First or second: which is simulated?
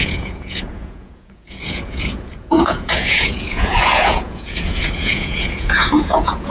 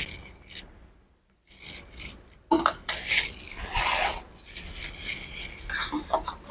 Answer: first